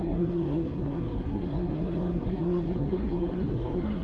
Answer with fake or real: fake